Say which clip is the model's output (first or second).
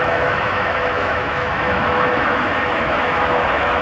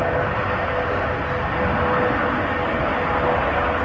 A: first